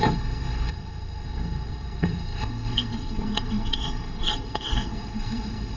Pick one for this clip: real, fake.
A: fake